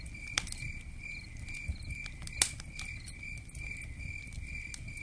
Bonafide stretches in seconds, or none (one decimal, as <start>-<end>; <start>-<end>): 0.0-5.0